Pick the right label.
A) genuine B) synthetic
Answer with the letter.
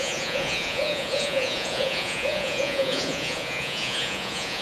B